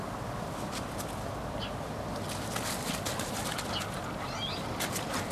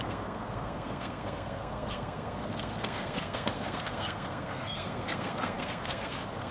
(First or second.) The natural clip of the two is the first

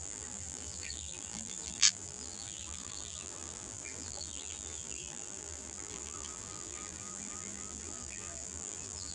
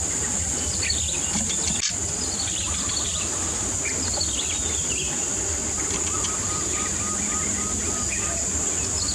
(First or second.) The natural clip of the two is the second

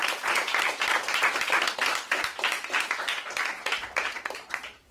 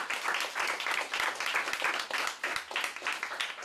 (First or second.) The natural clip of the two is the second